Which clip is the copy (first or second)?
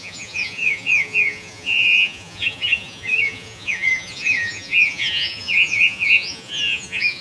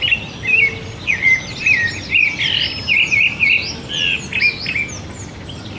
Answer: first